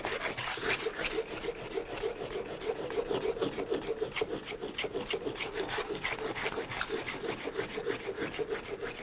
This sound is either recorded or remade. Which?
recorded